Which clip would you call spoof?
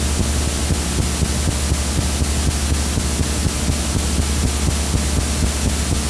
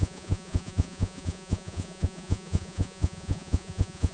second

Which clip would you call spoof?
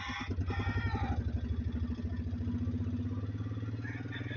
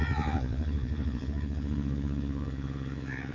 second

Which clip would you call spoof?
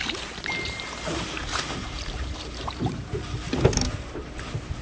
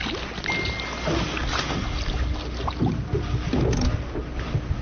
first